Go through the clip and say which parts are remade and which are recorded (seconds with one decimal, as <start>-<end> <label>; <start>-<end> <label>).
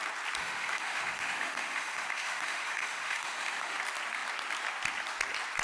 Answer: 0.0-0.4 recorded; 0.4-3.8 remade; 3.8-5.6 recorded